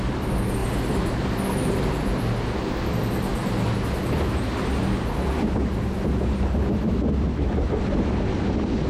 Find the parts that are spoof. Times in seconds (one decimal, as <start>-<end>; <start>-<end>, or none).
none